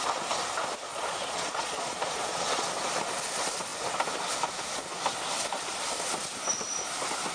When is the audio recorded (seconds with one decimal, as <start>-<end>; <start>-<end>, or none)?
0.0-0.9; 2.7-7.3